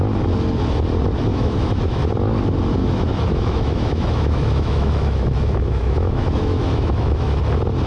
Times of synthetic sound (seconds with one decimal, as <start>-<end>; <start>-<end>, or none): 1.3-2.0; 2.8-7.4